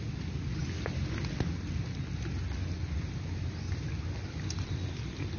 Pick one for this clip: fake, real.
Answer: real